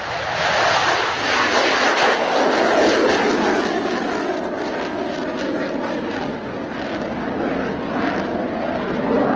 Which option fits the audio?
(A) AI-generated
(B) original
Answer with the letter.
B